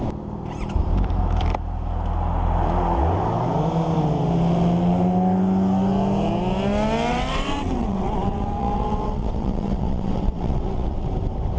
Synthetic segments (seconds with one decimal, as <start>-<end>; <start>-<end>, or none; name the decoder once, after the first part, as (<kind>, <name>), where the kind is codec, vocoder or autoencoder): 7.1-11.1 (vocoder, WaveNeXt)